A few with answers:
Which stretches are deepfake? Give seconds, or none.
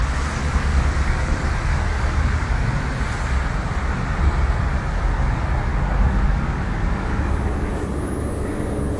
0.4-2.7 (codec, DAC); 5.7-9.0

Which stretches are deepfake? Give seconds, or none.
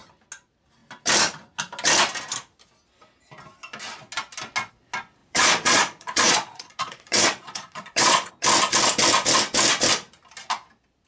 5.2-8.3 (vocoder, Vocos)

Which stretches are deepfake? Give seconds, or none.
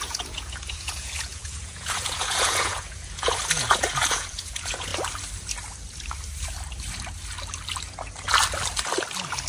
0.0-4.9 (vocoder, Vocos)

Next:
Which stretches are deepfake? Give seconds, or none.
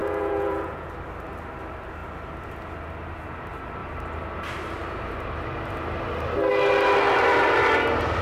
0.0-0.9 (vocoder, Vocos)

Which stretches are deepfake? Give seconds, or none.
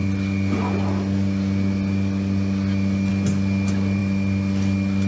none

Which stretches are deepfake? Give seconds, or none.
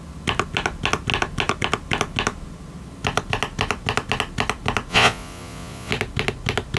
4.9-5.9 (vocoder, Vocos)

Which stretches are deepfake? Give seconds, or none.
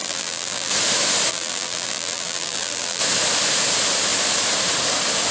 0.0-0.7 (vocoder, BigVGAN v2); 1.3-3.0